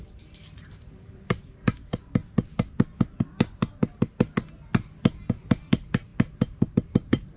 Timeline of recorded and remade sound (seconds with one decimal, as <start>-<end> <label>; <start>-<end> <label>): 0.0-2.2 remade; 2.2-5.3 recorded; 5.3-6.1 remade; 6.1-6.7 recorded; 6.7-7.4 remade